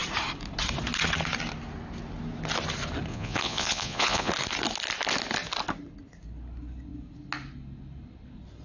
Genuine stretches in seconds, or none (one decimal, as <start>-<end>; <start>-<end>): 0.0-3.1; 4.3-8.6